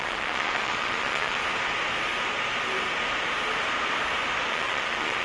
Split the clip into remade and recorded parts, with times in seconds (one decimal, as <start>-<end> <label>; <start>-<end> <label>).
0.0-1.4 remade; 1.4-4.5 recorded; 4.5-5.2 remade